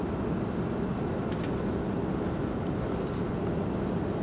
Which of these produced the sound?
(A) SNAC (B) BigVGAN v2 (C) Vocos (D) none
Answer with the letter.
D